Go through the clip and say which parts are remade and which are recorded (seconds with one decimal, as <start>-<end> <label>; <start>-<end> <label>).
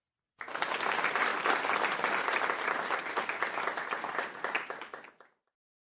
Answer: 0.0-5.9 recorded